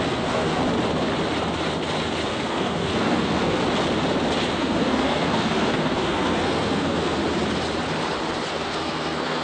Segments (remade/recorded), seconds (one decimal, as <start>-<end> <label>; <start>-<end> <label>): 0.0-0.6 remade; 0.6-2.3 recorded; 2.3-3.6 remade; 3.6-4.5 recorded; 4.5-7.2 remade; 7.2-8.5 recorded; 8.5-9.4 remade